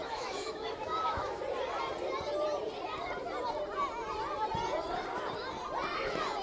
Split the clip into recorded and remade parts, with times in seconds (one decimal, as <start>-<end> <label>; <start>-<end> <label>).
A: 0.0-1.4 remade; 1.4-6.4 recorded